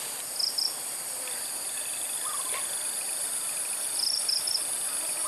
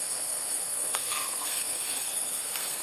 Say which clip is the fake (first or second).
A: second